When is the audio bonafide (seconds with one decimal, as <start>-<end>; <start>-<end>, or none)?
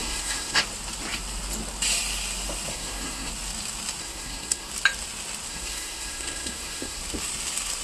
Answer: 0.6-2.7; 3.3-4.0; 4.7-5.5; 7.0-7.8